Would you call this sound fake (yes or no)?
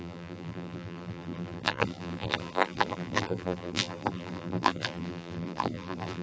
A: yes